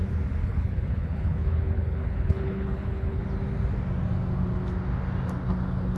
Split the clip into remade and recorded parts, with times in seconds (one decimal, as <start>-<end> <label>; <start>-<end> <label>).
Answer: 0.0-0.4 recorded; 0.4-3.2 remade; 3.2-6.0 recorded